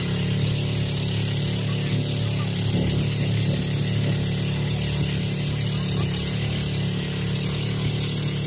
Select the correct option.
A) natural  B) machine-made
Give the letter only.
A